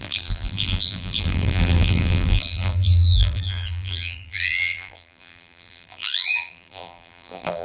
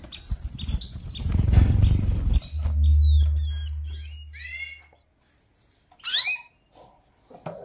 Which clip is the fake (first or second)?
first